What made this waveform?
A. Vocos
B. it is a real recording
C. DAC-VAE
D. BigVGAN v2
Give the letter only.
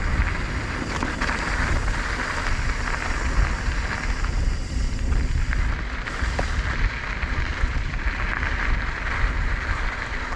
B